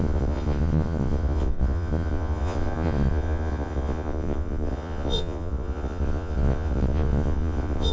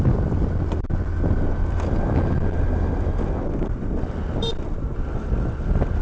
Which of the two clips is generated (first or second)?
first